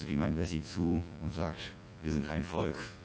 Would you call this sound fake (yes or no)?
yes